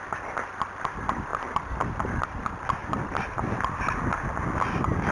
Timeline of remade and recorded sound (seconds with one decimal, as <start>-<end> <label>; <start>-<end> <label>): 0.0-2.8 recorded; 2.8-4.2 remade; 4.2-5.1 recorded